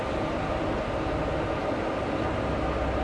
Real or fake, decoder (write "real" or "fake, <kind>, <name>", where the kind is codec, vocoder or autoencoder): real